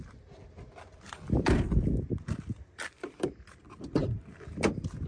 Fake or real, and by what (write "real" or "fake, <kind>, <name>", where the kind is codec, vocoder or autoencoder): real